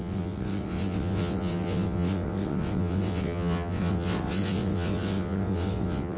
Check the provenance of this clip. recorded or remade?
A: remade